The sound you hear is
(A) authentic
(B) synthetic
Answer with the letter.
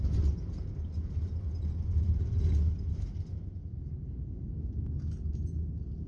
A